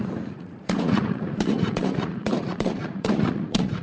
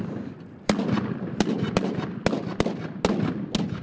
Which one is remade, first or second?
first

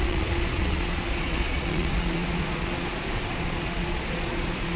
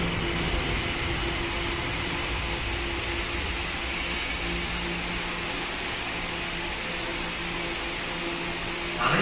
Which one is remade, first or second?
first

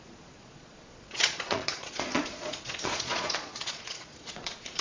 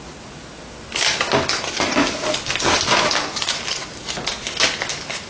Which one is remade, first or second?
first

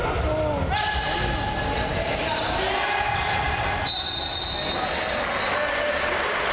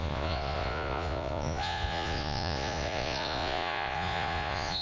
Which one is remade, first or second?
second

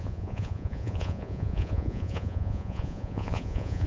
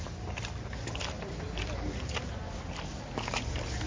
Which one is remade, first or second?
first